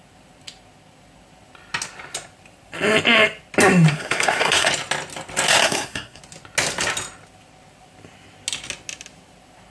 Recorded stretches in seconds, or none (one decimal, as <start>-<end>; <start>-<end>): 0.0-3.9; 4.7-5.6; 6.2-9.7